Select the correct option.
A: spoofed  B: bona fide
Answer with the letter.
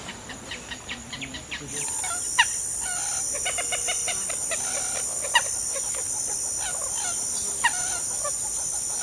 B